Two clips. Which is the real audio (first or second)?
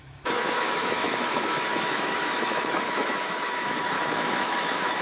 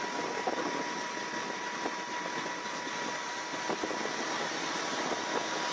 second